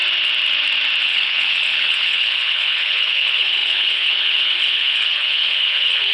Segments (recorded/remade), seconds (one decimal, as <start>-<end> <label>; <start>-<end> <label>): 0.0-1.0 recorded; 1.0-6.1 remade